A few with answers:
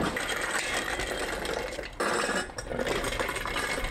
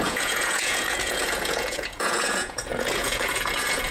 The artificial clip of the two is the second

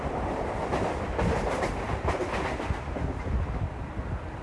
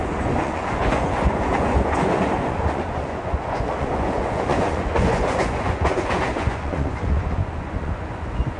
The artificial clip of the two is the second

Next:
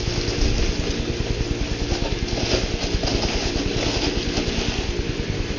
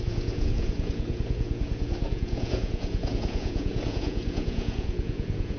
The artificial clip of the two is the second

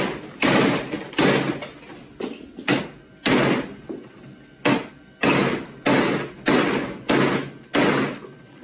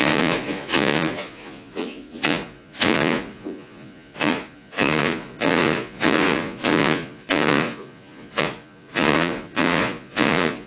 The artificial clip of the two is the second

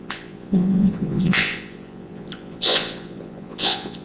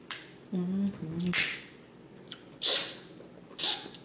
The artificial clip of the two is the first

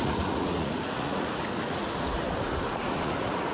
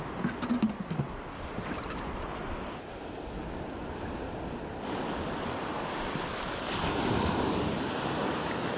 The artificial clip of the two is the first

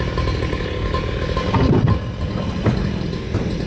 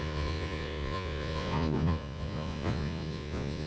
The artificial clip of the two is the second